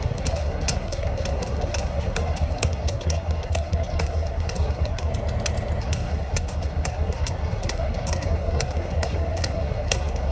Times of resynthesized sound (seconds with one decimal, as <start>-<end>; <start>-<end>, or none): 0.0-5.1; 5.8-10.3